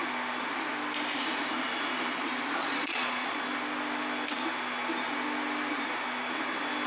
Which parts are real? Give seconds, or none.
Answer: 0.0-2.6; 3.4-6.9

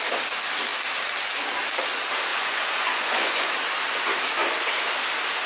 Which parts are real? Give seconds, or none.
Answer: 0.0-2.3; 3.5-5.5

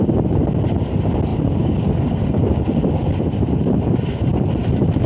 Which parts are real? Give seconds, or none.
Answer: 0.0-5.1